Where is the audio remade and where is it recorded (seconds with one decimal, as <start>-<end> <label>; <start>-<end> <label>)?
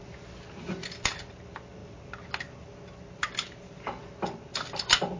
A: 0.0-5.2 recorded